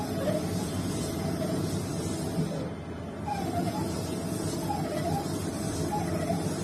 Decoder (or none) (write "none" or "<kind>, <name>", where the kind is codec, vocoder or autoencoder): none